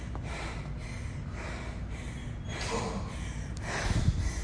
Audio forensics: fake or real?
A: real